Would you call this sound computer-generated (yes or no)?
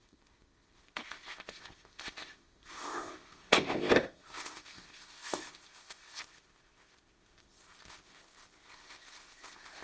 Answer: yes